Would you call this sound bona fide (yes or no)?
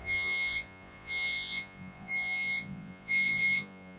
no